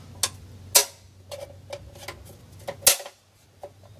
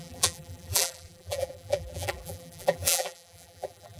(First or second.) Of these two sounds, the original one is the first